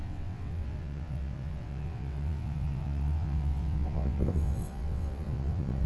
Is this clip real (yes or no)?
no